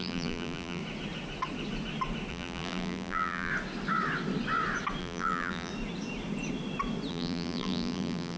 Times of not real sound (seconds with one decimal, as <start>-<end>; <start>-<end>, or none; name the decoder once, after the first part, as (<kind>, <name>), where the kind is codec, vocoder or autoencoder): 0.0-0.8 (vocoder, BigVGAN v2); 2.3-3.5; 5.0-5.7; 7.1-8.4

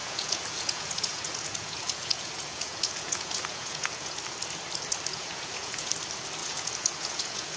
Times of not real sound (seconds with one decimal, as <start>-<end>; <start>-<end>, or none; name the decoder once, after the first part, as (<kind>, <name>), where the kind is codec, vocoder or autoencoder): 0.0-4.2 (vocoder, Vocos); 5.1-5.9; 6.4-7.6

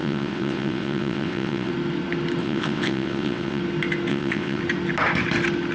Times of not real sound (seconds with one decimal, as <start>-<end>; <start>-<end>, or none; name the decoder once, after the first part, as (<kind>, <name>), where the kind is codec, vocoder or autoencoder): 0.0-1.7 (vocoder, WaveNeXt); 2.4-3.6; 4.1-4.6